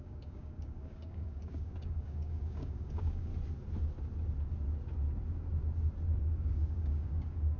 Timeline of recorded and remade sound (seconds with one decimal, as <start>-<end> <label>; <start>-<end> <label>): 0.0-3.3 remade; 3.3-6.2 recorded; 6.2-7.6 remade